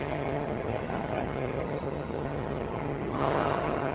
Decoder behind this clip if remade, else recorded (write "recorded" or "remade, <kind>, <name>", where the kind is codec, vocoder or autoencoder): remade, vocoder, HiFi-GAN